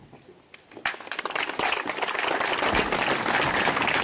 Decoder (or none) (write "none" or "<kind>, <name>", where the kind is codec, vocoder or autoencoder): none